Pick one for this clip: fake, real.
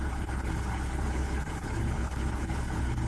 fake